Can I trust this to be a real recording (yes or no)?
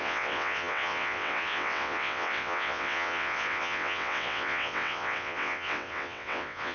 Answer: no